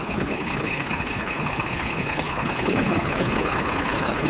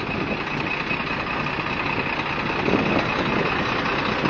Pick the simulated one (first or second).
first